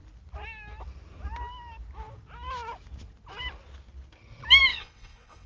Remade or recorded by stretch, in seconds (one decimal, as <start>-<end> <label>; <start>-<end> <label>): 0.0-4.7 recorded; 4.7-5.5 remade